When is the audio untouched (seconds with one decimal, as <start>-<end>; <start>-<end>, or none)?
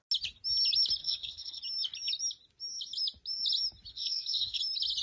0.0-1.0; 1.6-3.9; 4.6-5.0